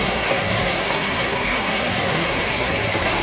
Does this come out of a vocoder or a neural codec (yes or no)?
yes